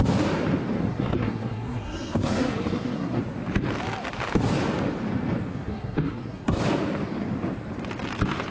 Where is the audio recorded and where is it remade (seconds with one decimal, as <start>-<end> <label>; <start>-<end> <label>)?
0.0-0.8 recorded; 0.8-3.2 remade; 3.2-5.5 recorded; 5.5-6.6 remade; 6.6-8.5 recorded